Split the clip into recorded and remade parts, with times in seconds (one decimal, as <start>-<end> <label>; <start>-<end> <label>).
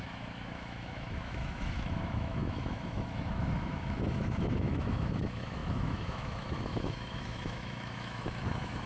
0.0-8.9 remade